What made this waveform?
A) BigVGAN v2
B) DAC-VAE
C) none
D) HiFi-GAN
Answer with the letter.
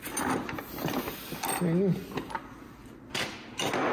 C